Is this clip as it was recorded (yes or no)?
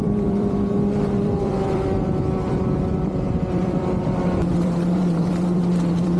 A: no